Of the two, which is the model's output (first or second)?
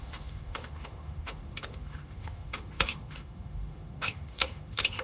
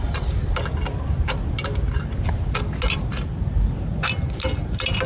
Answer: first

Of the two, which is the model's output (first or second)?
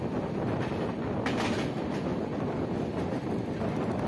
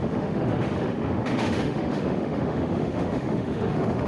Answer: second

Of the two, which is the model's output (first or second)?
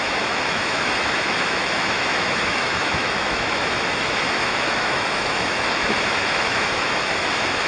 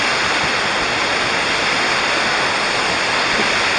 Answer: first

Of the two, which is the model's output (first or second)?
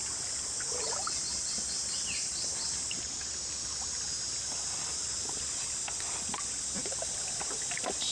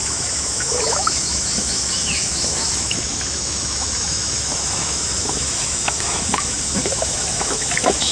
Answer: second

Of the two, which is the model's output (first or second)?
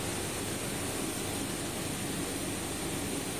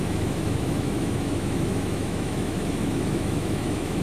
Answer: second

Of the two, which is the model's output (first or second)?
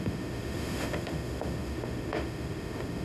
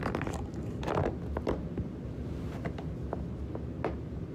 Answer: first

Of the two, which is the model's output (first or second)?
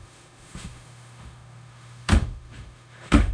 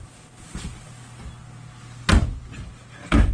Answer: first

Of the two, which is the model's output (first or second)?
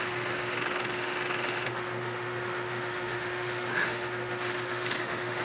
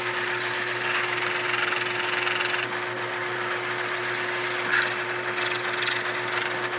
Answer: first